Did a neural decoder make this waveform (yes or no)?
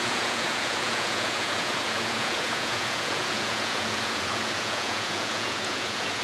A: yes